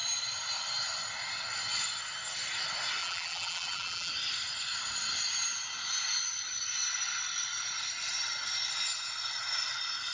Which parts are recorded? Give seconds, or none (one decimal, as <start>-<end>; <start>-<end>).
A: 0.0-3.0; 4.1-10.1